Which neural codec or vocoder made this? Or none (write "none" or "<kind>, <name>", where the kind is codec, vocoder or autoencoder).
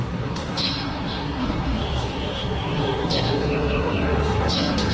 codec, SNAC